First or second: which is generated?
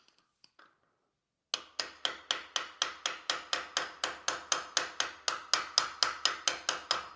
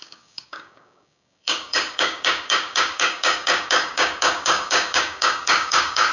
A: second